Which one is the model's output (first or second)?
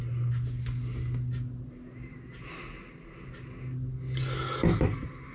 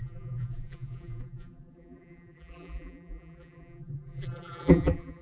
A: second